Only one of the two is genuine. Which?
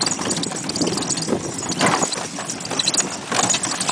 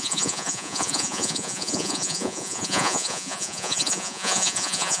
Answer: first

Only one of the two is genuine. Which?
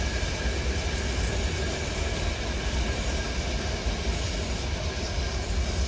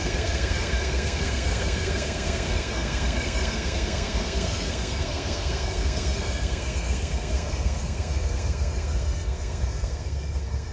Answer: first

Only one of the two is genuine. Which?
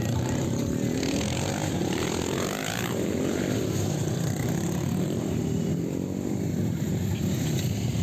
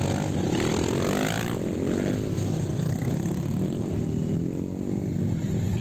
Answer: second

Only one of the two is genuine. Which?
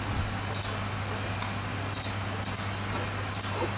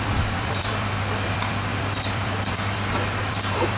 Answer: first